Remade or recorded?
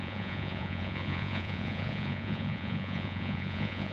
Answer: remade